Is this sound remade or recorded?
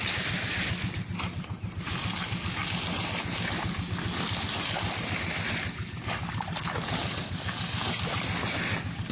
recorded